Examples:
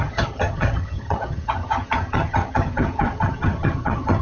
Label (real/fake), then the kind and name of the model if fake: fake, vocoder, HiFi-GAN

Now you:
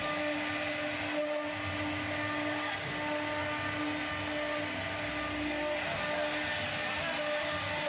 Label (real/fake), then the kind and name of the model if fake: real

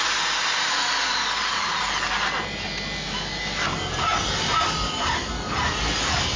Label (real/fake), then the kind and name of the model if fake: real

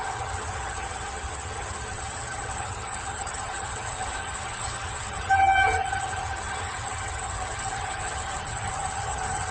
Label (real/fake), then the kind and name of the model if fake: fake, vocoder, HiFi-GAN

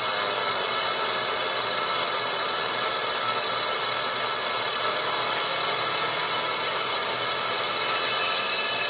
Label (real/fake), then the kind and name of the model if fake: real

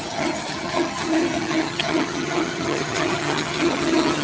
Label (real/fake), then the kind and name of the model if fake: fake, vocoder, HiFi-GAN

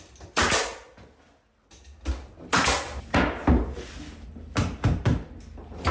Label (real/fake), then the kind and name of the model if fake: real